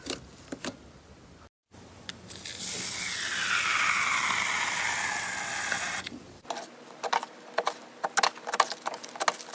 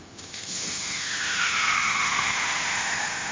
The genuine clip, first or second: first